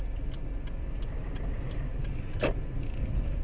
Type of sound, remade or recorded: recorded